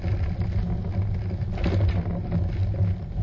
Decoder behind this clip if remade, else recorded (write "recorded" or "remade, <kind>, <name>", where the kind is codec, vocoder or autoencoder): recorded